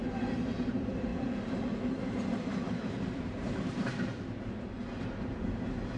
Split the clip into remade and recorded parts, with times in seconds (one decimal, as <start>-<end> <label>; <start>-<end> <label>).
0.0-0.7 recorded; 0.7-1.1 remade; 1.1-2.9 recorded; 2.9-3.9 remade; 3.9-6.0 recorded